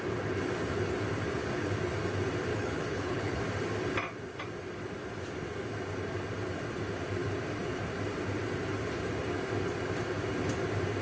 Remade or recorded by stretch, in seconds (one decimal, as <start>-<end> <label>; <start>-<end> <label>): 0.0-2.5 recorded; 2.5-3.4 remade; 3.4-11.0 recorded